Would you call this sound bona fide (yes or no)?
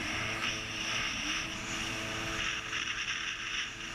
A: yes